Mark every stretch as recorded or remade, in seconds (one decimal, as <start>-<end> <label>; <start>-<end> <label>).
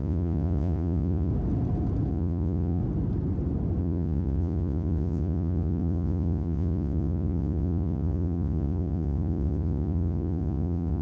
0.0-1.3 remade; 1.3-2.1 recorded; 2.1-2.8 remade; 2.8-3.8 recorded; 3.8-11.0 remade